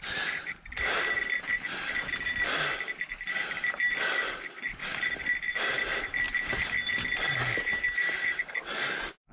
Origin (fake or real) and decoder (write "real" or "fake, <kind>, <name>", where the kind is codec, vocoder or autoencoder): real